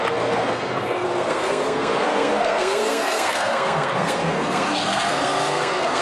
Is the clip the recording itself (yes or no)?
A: no